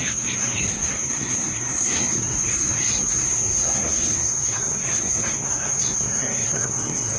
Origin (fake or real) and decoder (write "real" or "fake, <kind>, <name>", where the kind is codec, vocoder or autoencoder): fake, codec, SNAC